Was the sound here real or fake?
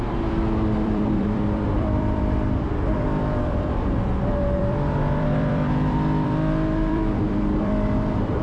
fake